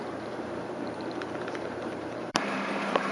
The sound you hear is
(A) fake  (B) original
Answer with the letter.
A